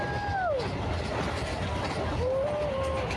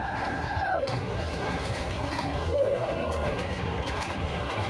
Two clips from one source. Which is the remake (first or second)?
second